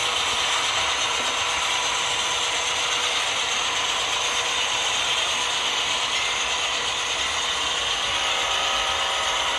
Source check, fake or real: real